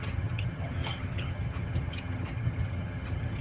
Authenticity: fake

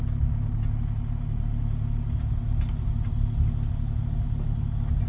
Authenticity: real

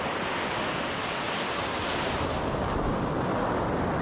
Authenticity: real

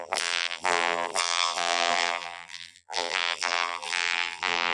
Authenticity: fake